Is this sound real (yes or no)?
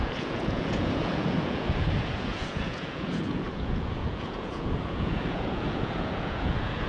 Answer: no